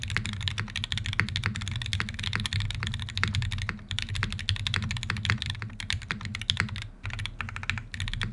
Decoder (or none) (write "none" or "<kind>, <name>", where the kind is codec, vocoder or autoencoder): none